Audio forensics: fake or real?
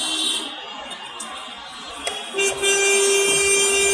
real